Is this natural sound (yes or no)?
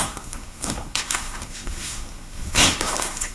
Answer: no